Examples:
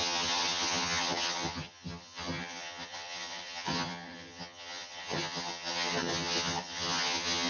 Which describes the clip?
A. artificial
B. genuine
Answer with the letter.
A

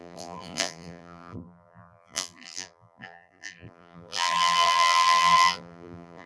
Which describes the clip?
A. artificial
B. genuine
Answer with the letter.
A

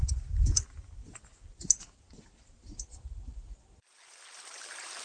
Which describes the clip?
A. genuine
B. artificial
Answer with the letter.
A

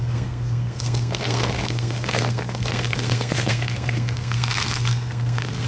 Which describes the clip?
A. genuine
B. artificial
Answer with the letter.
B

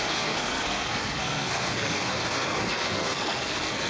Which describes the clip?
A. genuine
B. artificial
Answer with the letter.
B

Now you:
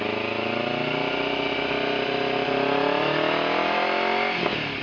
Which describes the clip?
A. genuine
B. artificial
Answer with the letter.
A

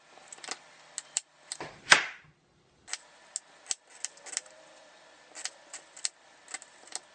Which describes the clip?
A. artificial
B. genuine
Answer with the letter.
B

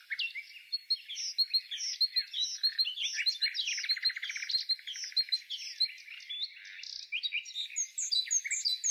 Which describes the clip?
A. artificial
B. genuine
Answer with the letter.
B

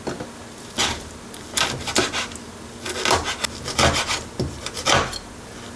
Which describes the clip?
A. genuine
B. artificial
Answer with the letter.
A